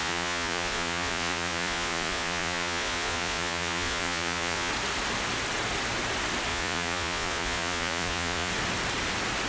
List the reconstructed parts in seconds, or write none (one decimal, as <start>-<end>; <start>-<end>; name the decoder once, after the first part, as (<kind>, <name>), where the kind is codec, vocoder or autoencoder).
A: 0.0-4.7 (vocoder, Vocos); 6.5-8.5